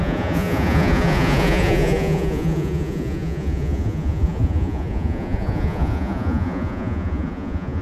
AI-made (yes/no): yes